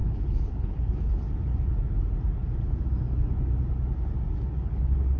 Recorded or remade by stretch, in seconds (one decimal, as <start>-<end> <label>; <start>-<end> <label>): 0.0-1.5 remade; 1.5-4.6 recorded; 4.6-5.2 remade